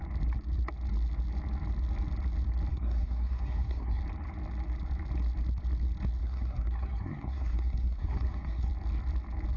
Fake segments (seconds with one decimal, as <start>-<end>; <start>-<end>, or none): 2.7-4.0; 6.2-8.7